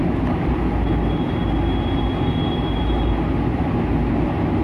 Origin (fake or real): real